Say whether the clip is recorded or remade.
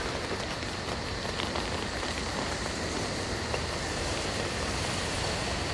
recorded